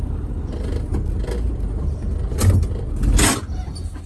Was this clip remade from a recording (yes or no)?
no